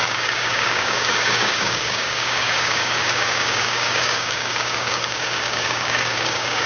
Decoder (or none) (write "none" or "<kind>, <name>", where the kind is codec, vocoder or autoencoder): codec, DAC